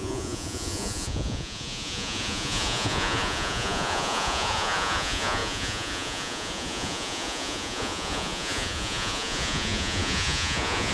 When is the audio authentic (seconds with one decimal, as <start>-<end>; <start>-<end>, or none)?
none